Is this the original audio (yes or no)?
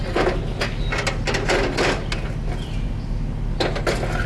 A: yes